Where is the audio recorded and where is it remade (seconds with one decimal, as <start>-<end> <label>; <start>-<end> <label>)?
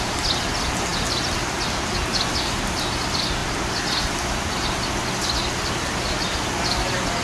0.0-7.2 recorded